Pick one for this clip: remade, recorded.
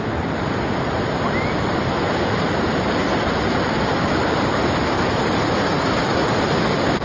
remade